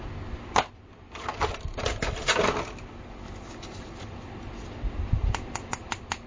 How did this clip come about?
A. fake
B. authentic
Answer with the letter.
B